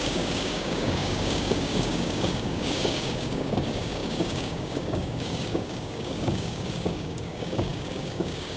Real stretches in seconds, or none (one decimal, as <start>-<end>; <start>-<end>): none